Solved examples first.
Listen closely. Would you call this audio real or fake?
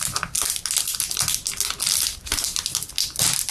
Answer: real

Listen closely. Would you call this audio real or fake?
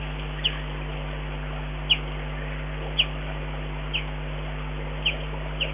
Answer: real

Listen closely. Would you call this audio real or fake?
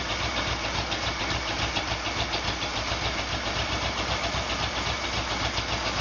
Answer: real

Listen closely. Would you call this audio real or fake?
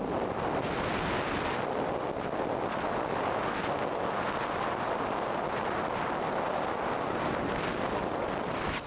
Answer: real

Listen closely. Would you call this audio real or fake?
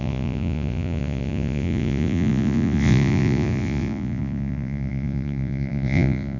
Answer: fake